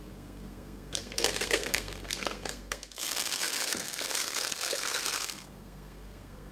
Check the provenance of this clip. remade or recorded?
remade